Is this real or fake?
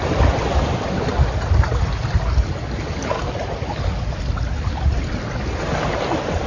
real